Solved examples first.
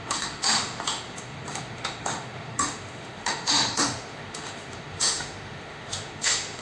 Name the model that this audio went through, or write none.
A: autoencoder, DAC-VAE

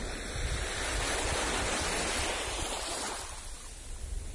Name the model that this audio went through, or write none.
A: none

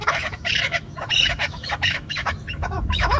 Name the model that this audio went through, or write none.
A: autoencoder, DAC-VAE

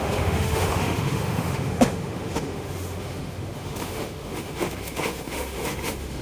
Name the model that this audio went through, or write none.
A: autoencoder, DAC-VAE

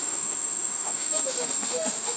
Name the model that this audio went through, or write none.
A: autoencoder, DAC-VAE